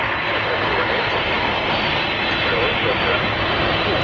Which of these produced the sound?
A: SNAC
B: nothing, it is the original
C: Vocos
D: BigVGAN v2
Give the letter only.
D